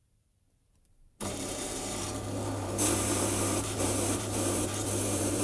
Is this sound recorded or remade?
remade